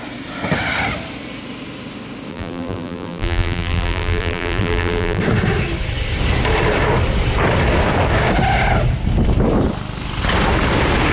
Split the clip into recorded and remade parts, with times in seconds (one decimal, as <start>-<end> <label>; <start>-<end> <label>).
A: 0.0-2.3 recorded; 2.3-5.2 remade; 5.2-11.1 recorded